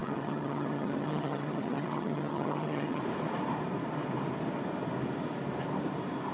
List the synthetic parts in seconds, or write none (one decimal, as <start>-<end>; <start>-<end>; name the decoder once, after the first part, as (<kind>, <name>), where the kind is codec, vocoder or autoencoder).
0.0-3.0 (vocoder, HiFi-GAN)